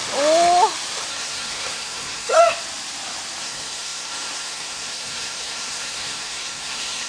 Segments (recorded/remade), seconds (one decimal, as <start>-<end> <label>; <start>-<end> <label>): 0.0-1.1 recorded; 1.1-2.4 remade; 2.4-3.4 recorded; 3.4-7.1 remade